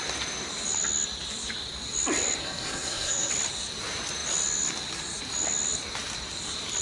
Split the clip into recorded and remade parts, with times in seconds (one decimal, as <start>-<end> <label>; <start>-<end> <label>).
0.0-2.4 recorded; 2.4-3.3 remade; 3.3-6.8 recorded